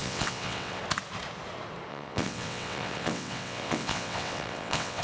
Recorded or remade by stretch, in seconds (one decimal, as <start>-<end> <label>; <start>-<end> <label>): 0.0-0.8 remade; 0.8-1.9 recorded; 1.9-5.0 remade